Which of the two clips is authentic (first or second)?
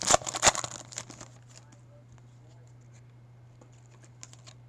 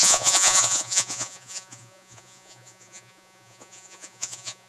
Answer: first